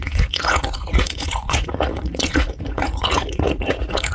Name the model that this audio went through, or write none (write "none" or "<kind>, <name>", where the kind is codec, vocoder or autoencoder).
vocoder, Vocos